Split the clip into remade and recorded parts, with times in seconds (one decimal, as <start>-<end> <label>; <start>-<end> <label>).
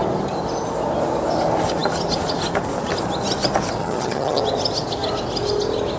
0.0-3.8 recorded; 3.8-4.4 remade; 4.4-6.0 recorded